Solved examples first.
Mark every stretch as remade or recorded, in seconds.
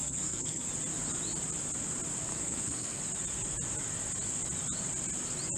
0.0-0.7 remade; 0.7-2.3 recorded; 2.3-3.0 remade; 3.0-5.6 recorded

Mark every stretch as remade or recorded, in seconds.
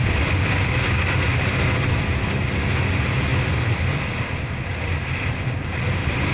0.0-6.3 recorded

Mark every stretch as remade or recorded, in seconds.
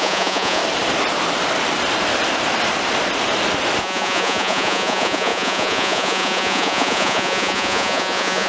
0.0-0.6 remade; 0.6-3.8 recorded; 3.8-8.5 remade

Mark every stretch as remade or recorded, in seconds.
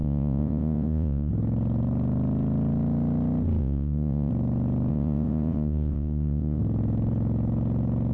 0.0-1.3 remade; 1.3-3.6 recorded; 3.6-4.3 remade; 4.3-4.9 recorded; 4.9-6.6 remade; 6.6-8.1 recorded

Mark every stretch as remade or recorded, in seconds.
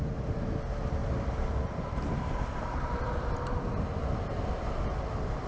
0.0-1.0 recorded; 1.0-3.6 remade; 3.6-5.5 recorded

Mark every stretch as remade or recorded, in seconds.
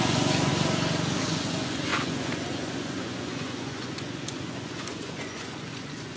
0.0-0.5 remade; 0.5-1.2 recorded; 1.2-6.2 remade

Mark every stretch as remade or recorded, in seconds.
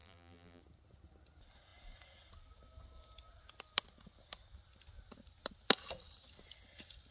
0.0-0.6 remade; 0.6-7.1 recorded